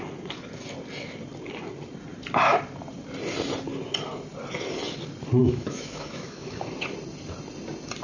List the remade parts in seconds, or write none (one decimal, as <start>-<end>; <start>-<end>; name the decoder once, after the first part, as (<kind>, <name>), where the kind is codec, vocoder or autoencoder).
5.4-6.6 (autoencoder, DAC-VAE)